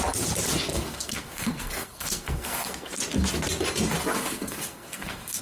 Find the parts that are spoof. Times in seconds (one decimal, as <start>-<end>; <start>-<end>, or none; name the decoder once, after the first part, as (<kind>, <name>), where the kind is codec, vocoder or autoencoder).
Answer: 0.7-3.0 (codec, SNAC); 4.2-5.4